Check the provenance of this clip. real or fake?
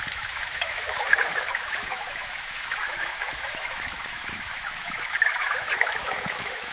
fake